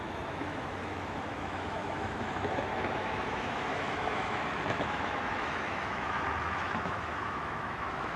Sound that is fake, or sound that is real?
fake